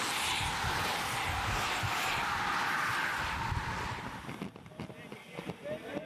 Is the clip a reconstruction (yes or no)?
no